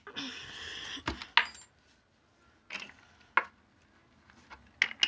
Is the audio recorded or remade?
recorded